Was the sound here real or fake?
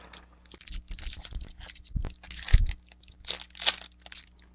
real